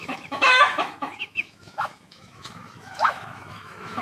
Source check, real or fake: fake